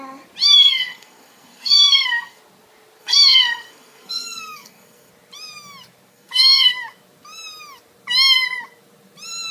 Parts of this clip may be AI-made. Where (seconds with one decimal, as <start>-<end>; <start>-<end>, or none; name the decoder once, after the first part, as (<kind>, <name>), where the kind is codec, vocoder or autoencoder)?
0.6-2.4 (codec, SNAC); 3.0-5.1; 6.1-6.7